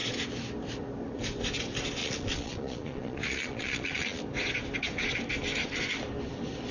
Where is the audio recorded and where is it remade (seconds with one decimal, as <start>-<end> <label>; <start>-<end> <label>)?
0.0-2.0 recorded; 2.0-4.2 remade; 4.2-6.7 recorded